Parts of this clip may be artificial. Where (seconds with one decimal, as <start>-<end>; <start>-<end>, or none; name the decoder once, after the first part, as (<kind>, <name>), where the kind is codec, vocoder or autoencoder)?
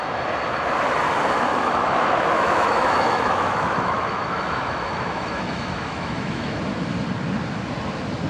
1.5-6.5 (autoencoder, DAC-VAE)